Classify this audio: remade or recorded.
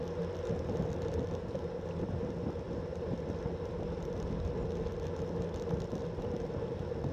recorded